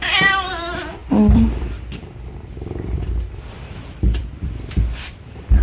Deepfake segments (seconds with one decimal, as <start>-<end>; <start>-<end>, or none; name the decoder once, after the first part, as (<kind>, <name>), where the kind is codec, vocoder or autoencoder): 0.0-5.6 (vocoder, BigVGAN v2)